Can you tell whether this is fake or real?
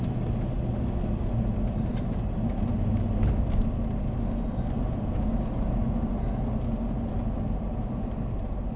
real